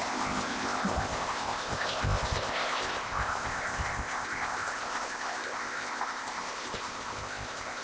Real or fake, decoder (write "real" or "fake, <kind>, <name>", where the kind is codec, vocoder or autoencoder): fake, codec, ZipCodec